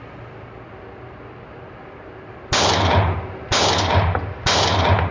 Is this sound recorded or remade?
recorded